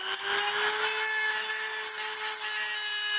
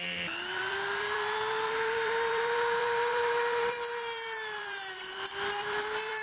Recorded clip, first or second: first